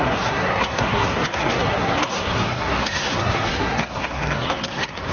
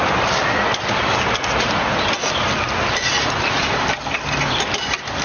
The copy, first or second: first